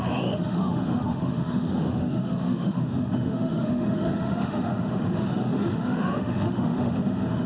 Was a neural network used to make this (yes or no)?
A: yes